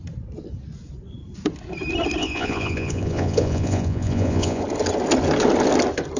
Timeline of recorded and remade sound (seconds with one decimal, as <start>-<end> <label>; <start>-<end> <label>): 0.0-2.2 recorded; 2.2-4.6 remade; 4.6-6.2 recorded